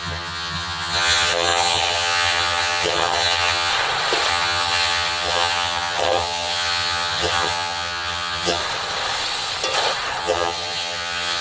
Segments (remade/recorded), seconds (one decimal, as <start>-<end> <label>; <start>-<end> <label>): 0.0-3.7 remade; 3.7-4.3 recorded; 4.3-8.6 remade; 8.6-10.2 recorded; 10.2-11.4 remade